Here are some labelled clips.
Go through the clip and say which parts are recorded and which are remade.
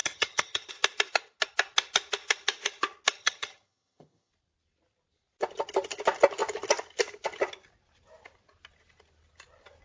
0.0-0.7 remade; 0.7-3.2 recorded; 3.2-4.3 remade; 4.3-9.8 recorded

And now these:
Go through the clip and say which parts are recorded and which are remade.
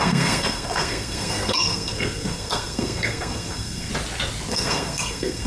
0.0-3.9 remade; 3.9-4.5 recorded; 4.5-5.5 remade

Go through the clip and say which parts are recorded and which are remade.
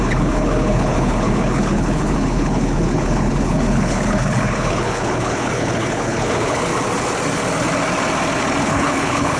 0.0-6.7 remade; 6.7-8.6 recorded; 8.6-9.4 remade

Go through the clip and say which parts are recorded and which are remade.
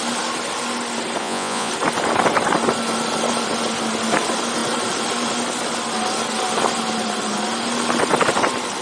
0.0-1.2 recorded; 1.2-1.7 remade; 1.7-8.8 recorded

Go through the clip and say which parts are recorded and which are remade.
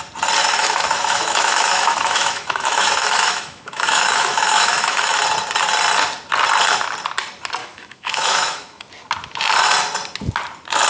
0.0-0.4 recorded; 0.4-5.2 remade; 5.2-7.6 recorded; 7.6-8.9 remade; 8.9-10.9 recorded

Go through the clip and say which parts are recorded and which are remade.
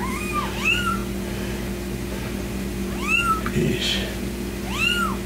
0.0-1.0 remade; 1.0-4.2 recorded; 4.2-5.3 remade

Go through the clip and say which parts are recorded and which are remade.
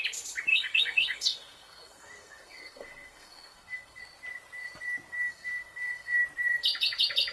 0.0-0.5 recorded; 0.5-4.0 remade; 4.0-5.1 recorded; 5.1-6.2 remade; 6.2-7.3 recorded